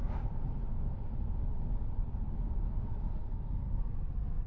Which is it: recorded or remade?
recorded